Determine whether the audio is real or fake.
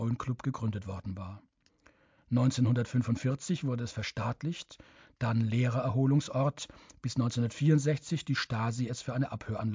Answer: real